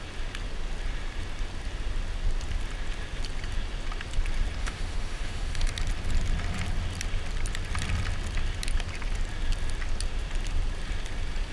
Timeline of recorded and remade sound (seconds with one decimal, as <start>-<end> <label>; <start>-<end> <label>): 0.0-4.6 recorded; 4.6-5.7 remade; 5.7-11.5 recorded